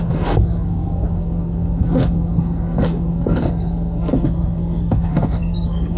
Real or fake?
fake